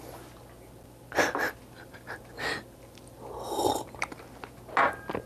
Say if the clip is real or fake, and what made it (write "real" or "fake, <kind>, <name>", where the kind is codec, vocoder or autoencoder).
real